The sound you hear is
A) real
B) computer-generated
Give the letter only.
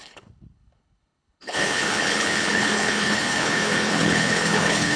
B